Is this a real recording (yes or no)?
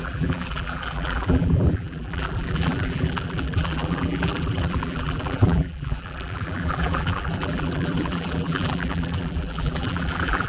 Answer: no